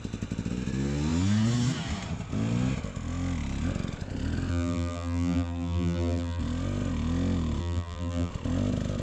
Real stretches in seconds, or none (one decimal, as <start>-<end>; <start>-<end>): 0.0-4.5; 6.4-7.6; 8.3-9.0